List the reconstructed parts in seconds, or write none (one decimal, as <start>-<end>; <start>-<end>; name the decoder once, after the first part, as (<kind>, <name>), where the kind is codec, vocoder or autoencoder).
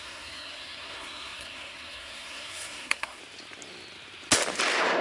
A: 0.0-3.2 (codec, SNAC)